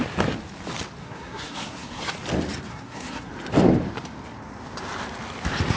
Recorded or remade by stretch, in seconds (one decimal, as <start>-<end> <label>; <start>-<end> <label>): 0.0-1.0 recorded; 1.0-2.0 remade; 2.0-2.7 recorded; 2.7-3.3 remade; 3.3-5.8 recorded